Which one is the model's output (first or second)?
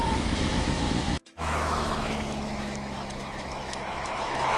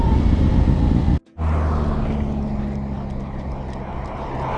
first